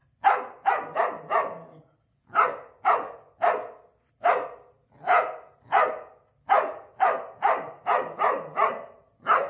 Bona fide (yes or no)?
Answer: yes